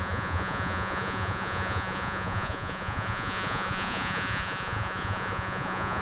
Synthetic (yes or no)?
yes